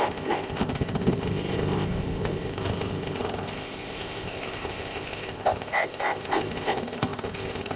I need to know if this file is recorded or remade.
remade